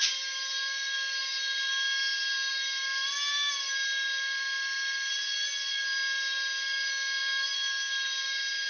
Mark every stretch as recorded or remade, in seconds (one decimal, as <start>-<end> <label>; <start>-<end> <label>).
0.0-8.7 recorded